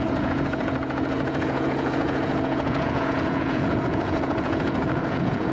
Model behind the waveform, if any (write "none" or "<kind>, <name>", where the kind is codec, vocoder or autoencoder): vocoder, Vocos